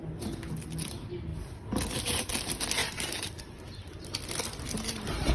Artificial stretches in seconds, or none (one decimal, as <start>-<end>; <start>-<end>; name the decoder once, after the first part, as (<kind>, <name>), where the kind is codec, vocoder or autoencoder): 1.3-2.2 (vocoder, BigVGAN v2); 2.8-4.3

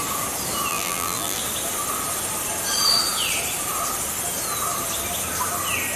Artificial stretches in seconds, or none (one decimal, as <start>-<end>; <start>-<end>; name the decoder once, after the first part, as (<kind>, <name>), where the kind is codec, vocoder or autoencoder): 0.7-1.4 (vocoder, BigVGAN v2)

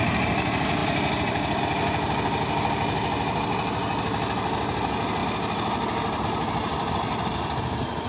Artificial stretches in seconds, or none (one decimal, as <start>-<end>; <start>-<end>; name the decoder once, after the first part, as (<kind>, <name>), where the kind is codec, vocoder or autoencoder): none

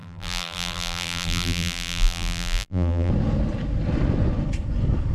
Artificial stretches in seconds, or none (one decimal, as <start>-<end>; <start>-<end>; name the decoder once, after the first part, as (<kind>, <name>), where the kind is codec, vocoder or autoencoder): 0.0-3.1 (vocoder, BigVGAN v2)

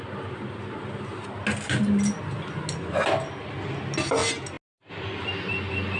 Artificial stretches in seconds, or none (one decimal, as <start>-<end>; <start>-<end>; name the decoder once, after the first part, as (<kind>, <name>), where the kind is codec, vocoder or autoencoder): none

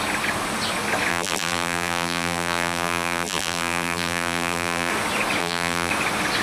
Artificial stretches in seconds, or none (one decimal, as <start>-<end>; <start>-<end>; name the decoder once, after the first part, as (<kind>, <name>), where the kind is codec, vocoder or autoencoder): 1.1-4.9 (vocoder, BigVGAN v2); 5.4-5.9